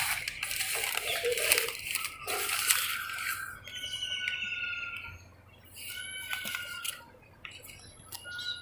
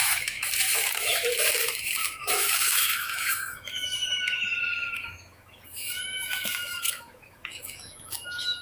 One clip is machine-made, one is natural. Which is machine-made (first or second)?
second